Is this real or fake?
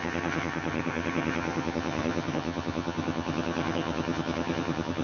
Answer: fake